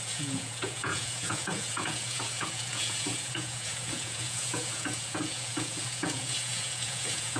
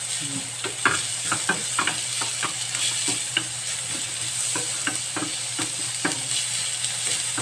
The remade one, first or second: first